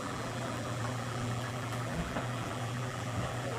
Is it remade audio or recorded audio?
remade